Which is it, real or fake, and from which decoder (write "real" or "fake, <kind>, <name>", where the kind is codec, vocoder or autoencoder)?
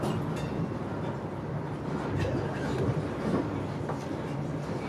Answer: real